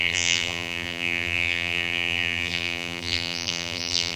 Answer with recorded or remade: remade